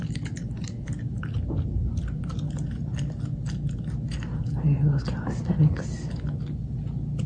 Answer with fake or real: real